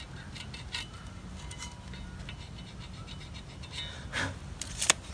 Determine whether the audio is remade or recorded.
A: recorded